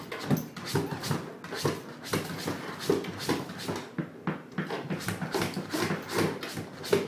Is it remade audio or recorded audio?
recorded